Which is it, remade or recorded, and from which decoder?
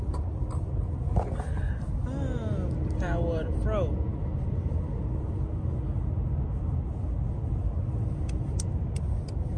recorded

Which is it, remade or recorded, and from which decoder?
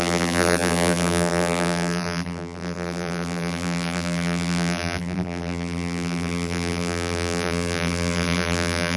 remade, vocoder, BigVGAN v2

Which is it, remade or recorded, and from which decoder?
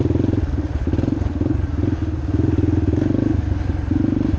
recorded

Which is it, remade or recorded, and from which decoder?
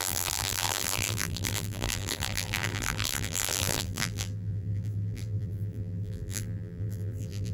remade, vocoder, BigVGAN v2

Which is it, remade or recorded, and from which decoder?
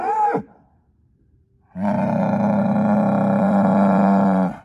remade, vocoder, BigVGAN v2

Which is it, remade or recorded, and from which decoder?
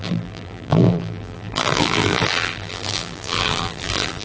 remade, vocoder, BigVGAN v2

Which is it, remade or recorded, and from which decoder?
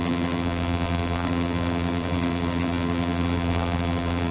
remade, vocoder, BigVGAN v2